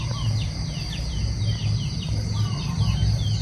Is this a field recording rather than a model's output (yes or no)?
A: yes